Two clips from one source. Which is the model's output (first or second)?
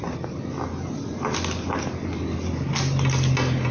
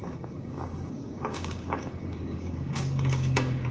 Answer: second